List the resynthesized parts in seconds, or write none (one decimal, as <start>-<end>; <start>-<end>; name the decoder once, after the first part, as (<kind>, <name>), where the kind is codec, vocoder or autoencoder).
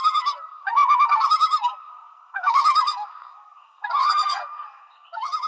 0.0-5.5 (codec, SNAC)